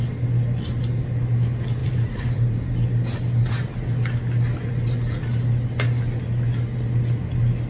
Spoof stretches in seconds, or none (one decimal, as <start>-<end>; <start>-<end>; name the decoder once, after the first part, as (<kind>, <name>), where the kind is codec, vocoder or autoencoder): 1.8-2.5 (vocoder, BigVGAN v2)